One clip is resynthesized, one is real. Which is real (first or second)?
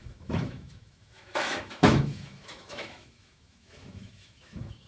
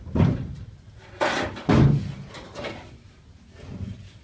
second